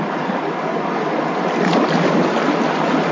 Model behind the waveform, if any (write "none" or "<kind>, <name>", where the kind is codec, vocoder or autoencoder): none